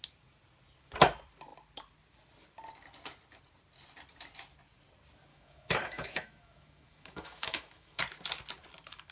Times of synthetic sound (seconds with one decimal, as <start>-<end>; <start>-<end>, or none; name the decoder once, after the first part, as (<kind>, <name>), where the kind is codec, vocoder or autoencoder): 5.3-8.0 (autoencoder, DAC-VAE)

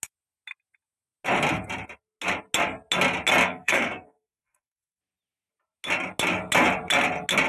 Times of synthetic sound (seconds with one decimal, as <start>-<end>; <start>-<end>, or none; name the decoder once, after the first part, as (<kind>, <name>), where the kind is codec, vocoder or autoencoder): 3.4-5.0 (codec, SNAC)

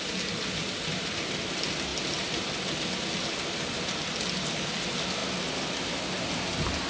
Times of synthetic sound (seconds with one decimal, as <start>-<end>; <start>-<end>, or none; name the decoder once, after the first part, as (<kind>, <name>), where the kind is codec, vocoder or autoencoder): none

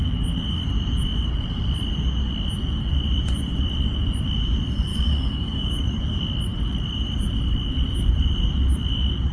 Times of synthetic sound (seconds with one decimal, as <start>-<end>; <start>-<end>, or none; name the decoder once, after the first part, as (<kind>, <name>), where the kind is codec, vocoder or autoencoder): 4.9-6.0 (codec, DAC)